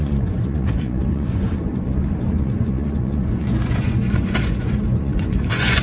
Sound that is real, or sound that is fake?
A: fake